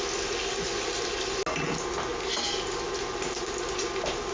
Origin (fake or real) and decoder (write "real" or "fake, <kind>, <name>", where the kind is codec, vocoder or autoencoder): real